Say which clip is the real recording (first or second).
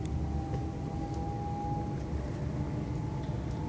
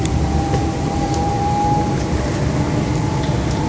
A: first